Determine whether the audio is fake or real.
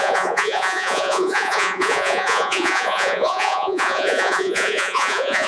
fake